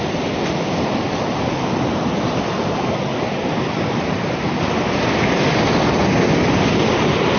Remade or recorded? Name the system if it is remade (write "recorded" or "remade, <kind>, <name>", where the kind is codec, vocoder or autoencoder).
recorded